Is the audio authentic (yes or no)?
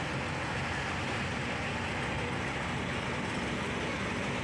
yes